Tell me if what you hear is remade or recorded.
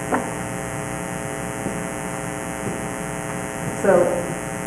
recorded